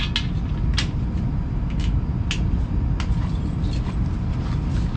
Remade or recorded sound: recorded